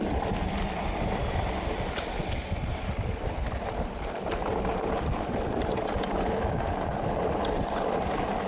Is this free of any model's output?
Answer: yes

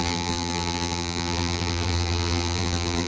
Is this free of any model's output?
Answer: no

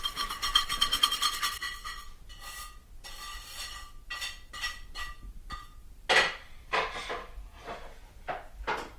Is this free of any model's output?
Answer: yes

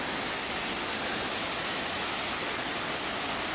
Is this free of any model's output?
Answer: yes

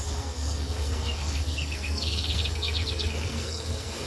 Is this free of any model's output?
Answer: no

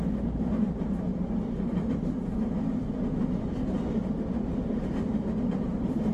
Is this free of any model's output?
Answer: yes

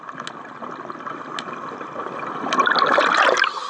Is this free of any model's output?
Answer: yes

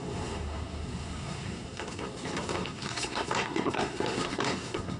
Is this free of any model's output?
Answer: no